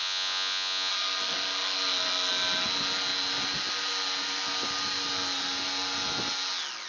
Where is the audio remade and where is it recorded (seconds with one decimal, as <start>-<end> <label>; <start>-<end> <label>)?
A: 0.0-0.9 remade; 0.9-6.9 recorded